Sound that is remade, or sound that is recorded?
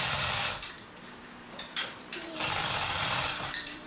remade